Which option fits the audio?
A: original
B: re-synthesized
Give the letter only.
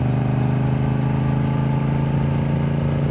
A